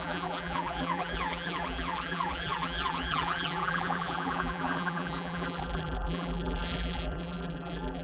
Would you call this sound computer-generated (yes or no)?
yes